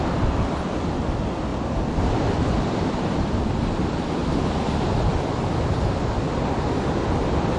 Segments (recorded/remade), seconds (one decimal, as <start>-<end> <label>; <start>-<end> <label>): 0.0-1.5 remade; 1.5-2.3 recorded; 2.3-4.2 remade; 4.2-5.0 recorded; 5.0-7.6 remade